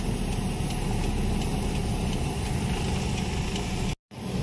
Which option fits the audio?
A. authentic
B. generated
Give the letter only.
A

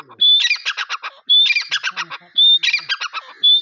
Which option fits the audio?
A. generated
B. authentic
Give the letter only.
B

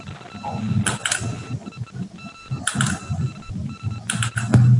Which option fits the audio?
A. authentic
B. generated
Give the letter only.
A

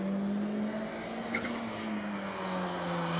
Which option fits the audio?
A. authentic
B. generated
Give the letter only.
A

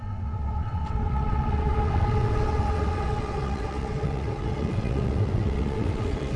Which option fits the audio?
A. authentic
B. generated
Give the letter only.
B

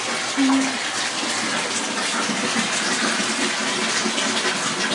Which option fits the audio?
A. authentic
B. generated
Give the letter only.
A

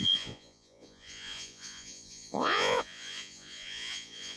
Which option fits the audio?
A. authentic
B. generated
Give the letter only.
B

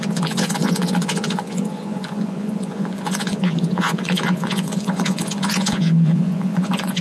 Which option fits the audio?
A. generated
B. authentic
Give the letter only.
A